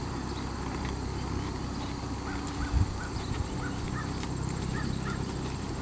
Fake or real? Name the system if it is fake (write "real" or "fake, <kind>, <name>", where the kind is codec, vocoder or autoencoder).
real